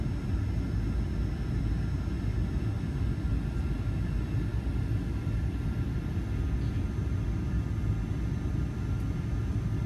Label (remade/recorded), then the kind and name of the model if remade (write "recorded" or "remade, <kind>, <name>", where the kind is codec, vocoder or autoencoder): recorded